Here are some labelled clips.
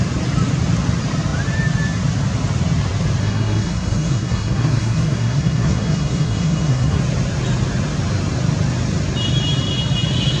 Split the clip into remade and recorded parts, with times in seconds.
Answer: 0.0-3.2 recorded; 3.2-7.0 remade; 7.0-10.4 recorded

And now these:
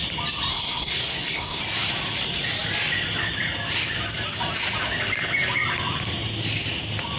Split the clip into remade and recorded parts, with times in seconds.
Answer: 0.0-0.5 recorded; 0.5-1.6 remade; 1.6-7.2 recorded

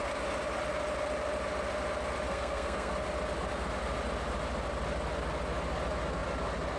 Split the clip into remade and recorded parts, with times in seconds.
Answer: 0.0-2.3 recorded; 2.3-2.9 remade; 2.9-6.8 recorded

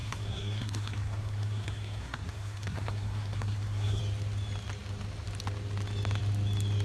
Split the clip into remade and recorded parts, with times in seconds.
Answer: 0.0-4.0 remade; 4.0-6.8 recorded